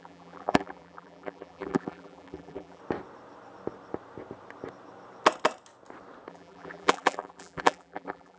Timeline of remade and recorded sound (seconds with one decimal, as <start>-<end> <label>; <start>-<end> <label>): 0.0-2.8 remade; 2.8-6.3 recorded; 6.3-8.4 remade